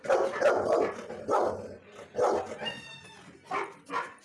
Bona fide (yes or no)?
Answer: yes